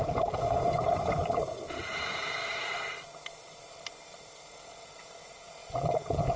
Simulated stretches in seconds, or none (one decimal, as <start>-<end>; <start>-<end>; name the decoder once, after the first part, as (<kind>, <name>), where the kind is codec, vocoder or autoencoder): 0.0-1.2 (vocoder, Vocos); 1.8-2.4; 4.5-6.4